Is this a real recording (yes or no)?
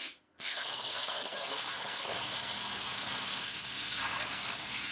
no